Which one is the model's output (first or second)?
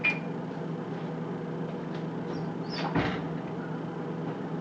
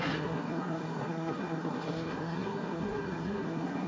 second